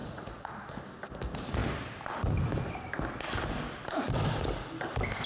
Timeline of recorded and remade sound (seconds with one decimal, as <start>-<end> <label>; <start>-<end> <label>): 0.0-0.7 remade; 0.7-5.3 recorded